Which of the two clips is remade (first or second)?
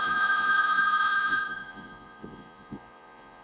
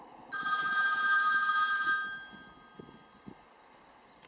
first